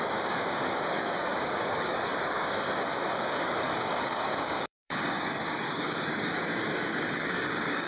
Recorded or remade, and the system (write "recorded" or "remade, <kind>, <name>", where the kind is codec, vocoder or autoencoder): remade, codec, DAC